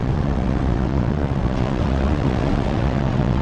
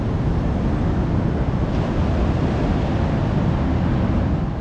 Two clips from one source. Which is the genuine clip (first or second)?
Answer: second